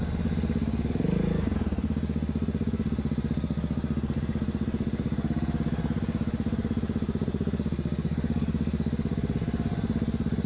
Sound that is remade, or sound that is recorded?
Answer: recorded